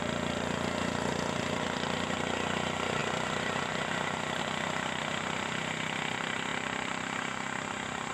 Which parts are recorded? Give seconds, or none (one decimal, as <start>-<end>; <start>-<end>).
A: 0.0-3.0; 4.4-6.5